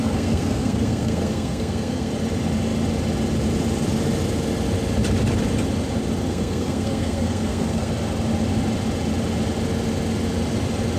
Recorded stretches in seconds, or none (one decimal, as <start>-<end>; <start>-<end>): 2.1-6.3; 7.9-11.0